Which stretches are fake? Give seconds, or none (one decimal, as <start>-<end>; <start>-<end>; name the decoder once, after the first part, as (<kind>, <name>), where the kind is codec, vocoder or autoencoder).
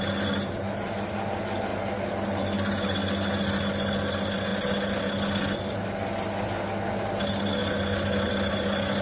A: none